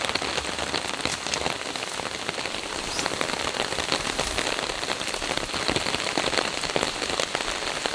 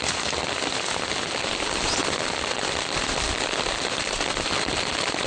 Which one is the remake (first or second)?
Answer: second